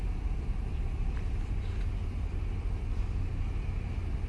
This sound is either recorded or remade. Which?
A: recorded